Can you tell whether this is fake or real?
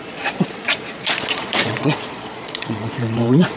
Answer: fake